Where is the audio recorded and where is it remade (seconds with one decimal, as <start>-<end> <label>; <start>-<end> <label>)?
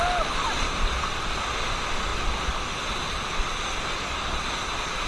0.0-5.1 recorded